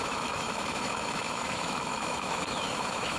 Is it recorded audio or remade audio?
remade